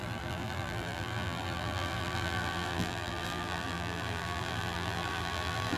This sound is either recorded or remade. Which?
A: remade